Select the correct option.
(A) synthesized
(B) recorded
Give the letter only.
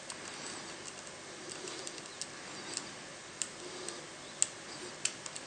B